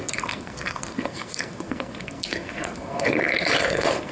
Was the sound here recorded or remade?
remade